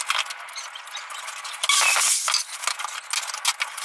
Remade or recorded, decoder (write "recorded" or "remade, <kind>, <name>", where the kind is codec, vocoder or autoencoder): recorded